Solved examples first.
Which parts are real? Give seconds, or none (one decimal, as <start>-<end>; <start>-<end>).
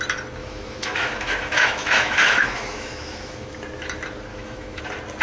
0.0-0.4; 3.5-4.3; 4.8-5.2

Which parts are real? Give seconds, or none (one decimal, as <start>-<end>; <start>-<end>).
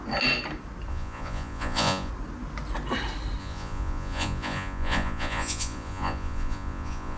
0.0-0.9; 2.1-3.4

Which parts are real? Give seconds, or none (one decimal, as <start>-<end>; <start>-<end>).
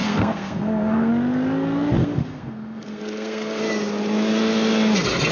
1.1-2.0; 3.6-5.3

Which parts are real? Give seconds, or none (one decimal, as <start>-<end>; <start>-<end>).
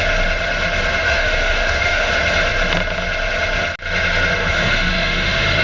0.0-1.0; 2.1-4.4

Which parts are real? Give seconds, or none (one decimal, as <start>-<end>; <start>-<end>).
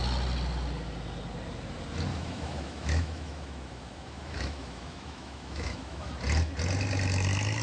0.0-2.1; 6.1-7.6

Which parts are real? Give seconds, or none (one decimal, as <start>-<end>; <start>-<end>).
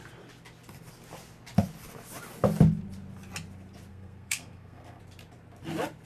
0.0-3.9; 5.0-6.1